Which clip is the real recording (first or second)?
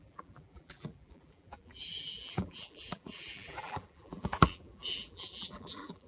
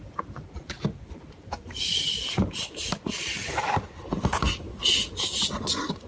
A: second